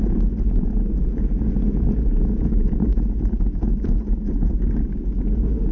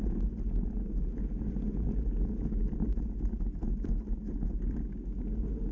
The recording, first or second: second